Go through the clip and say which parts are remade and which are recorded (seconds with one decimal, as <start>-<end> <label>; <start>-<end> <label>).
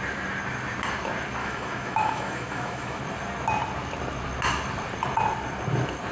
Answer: 0.0-1.4 recorded; 1.4-3.0 remade; 3.0-6.1 recorded